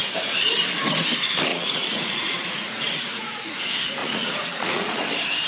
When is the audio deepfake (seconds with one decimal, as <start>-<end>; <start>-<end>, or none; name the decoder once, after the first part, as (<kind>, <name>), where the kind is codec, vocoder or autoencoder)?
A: 1.5-3.6 (vocoder, Vocos); 4.0-5.0